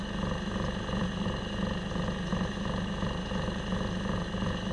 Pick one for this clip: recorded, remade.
recorded